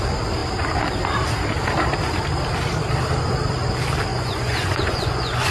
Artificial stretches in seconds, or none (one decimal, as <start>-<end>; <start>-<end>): 4.1-5.5